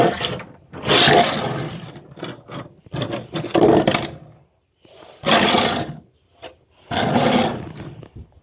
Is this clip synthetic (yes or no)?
no